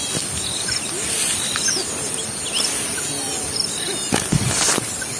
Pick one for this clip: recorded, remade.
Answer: recorded